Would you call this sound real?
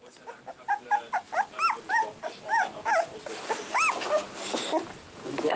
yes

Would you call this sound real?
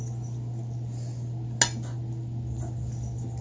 yes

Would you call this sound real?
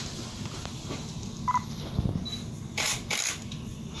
no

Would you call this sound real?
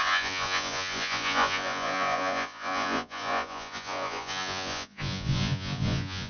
no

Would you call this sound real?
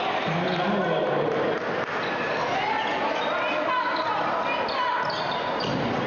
yes